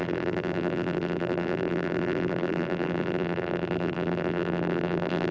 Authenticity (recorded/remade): remade